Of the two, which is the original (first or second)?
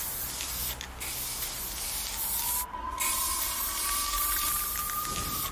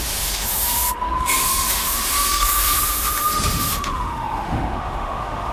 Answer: first